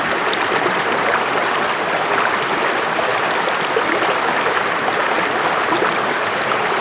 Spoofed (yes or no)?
no